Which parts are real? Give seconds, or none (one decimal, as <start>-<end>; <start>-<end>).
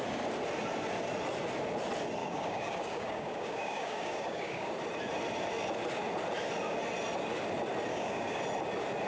0.0-2.2; 4.7-7.9; 8.4-9.1